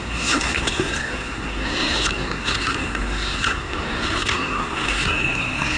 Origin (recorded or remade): remade